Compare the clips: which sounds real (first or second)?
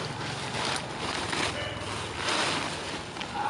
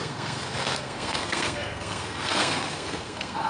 first